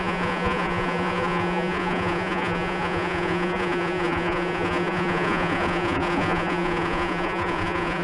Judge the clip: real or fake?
fake